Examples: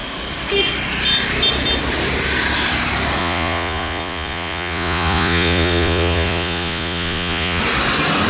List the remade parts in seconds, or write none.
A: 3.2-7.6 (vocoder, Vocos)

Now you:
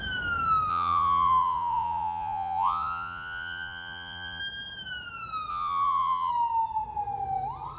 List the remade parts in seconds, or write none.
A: 0.7-4.4 (vocoder, Vocos); 5.5-6.3

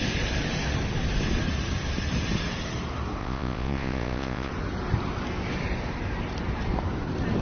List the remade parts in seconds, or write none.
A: 3.2-4.5 (vocoder, Vocos)

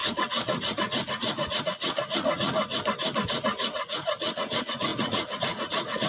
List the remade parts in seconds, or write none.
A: 0.0-2.6 (vocoder, Vocos); 3.3-6.1

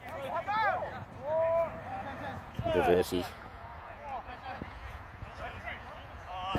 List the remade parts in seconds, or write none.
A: 2.3-6.6 (vocoder, Vocos)

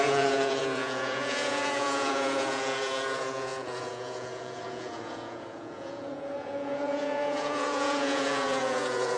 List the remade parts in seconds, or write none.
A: 0.0-9.2 (vocoder, Vocos)

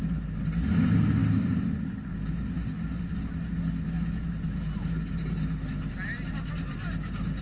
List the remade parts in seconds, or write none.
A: none

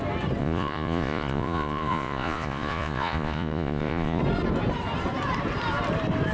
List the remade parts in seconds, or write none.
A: 0.4-4.2 (vocoder, Vocos)